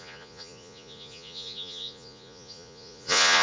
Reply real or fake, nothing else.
fake